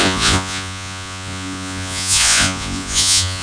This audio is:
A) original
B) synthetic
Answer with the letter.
B